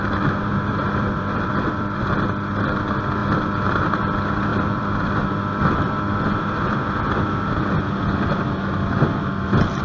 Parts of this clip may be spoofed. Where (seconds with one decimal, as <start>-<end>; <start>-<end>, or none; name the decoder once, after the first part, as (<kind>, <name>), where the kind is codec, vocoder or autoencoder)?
0.5-2.1 (vocoder, BigVGAN v2); 4.5-6.8